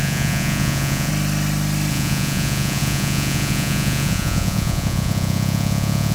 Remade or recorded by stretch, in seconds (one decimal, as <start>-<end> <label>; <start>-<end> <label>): 0.0-1.1 remade; 1.1-1.9 recorded; 1.9-6.1 remade